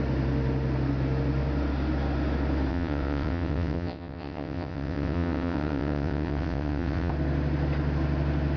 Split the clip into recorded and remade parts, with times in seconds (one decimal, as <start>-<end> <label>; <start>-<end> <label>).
0.0-2.7 recorded; 2.7-7.1 remade; 7.1-8.6 recorded